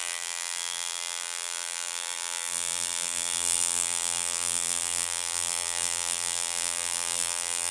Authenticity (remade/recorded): remade